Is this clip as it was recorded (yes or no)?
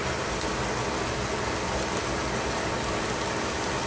yes